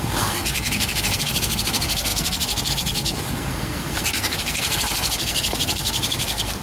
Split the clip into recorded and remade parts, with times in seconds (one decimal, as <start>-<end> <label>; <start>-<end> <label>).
0.0-6.6 remade